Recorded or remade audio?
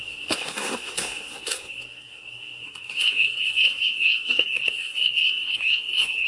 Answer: remade